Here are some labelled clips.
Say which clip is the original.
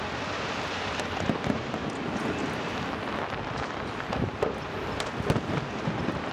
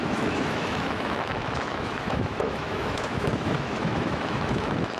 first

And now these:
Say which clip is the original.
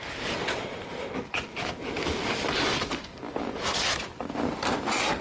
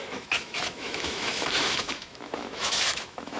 first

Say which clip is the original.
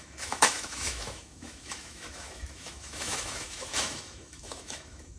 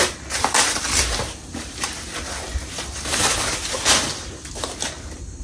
second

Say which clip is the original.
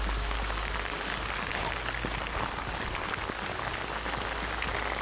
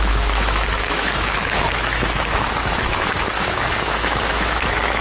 first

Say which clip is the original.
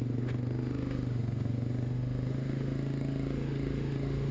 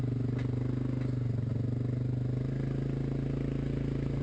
second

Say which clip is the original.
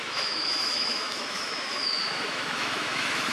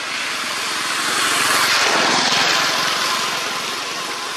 second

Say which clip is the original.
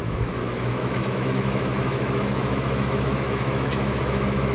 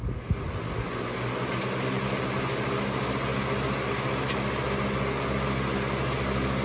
second